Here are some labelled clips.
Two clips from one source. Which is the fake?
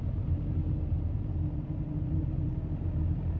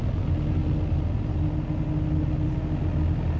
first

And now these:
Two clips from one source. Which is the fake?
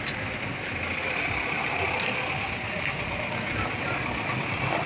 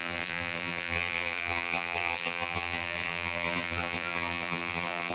second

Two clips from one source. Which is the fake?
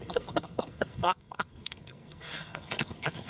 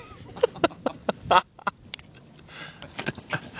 first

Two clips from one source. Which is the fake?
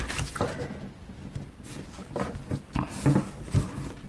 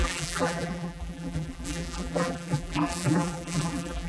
second